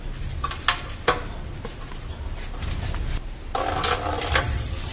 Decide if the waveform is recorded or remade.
recorded